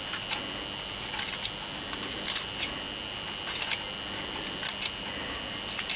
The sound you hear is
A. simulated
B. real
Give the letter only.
B